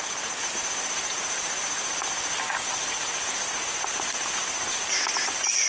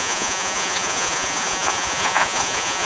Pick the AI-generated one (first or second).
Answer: second